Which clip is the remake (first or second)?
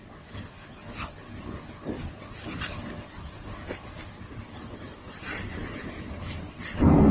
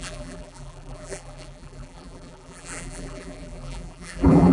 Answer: second